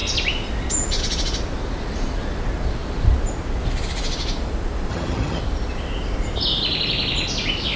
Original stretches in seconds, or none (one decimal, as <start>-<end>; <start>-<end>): 0.0-4.9; 5.4-7.8